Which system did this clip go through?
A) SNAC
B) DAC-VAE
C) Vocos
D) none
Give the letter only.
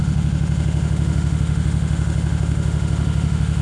B